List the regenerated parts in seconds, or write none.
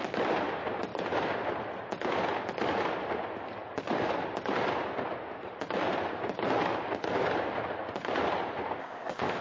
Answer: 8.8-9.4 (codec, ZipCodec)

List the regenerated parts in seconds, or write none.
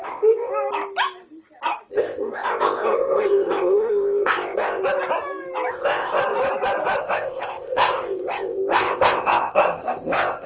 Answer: 0.0-0.5 (codec, ZipCodec); 1.9-4.8; 5.7-6.2; 7.0-10.5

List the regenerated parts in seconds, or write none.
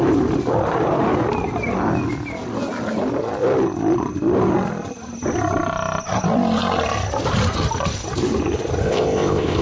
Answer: 8.8-9.6 (codec, ZipCodec)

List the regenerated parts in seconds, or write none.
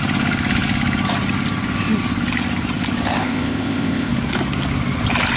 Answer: 3.2-4.1 (codec, ZipCodec)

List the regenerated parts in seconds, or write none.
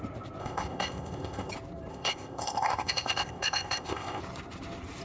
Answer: 0.4-1.5 (codec, ZipCodec); 1.9-4.2